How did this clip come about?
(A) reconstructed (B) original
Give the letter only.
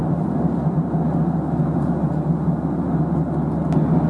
B